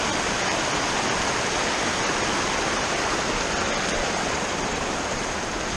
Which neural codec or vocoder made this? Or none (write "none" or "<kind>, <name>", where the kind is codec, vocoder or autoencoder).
none